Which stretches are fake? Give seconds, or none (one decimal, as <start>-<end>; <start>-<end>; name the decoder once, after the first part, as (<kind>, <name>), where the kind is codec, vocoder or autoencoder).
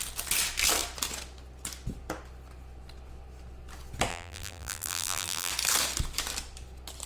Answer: 4.1-5.5 (vocoder, BigVGAN v2)